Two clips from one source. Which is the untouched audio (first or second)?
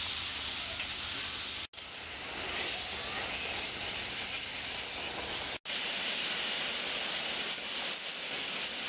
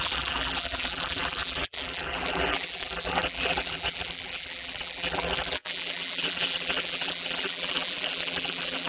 first